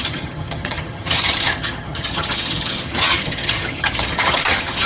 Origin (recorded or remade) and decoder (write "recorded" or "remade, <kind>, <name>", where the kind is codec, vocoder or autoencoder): remade, vocoder, HiFi-GAN